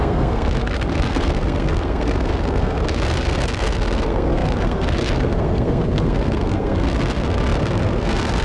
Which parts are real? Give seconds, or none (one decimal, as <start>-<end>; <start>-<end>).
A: none